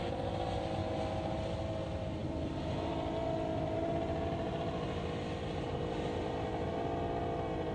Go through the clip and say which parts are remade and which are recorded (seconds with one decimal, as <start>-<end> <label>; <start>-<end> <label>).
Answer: 0.0-7.7 recorded